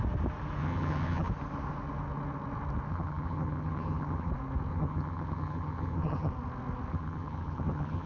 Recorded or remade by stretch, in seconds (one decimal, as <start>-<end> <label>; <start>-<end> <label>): 0.0-0.6 recorded; 0.6-1.3 remade; 1.3-2.9 recorded; 2.9-4.3 remade; 4.3-4.7 recorded; 4.7-6.3 remade; 6.3-6.9 recorded; 6.9-8.1 remade